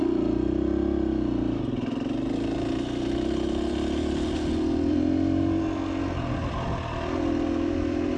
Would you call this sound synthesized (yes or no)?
no